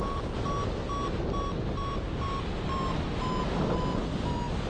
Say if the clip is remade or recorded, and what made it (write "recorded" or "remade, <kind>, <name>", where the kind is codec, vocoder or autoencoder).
recorded